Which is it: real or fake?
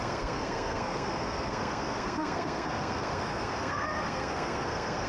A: fake